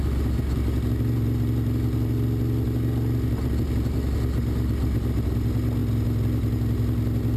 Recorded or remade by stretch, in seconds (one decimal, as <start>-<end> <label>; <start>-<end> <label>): 0.0-7.4 recorded